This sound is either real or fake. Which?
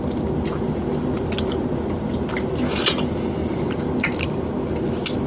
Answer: real